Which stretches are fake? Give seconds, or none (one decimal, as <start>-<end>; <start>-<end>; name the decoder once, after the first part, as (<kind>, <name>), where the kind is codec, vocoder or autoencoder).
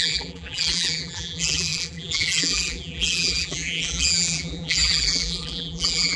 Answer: 0.0-6.2 (vocoder, BigVGAN v2)